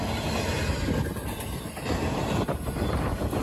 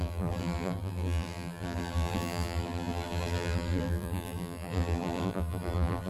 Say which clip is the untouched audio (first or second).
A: first